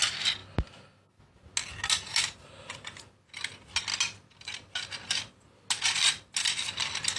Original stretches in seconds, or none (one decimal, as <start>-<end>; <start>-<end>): 0.0-7.2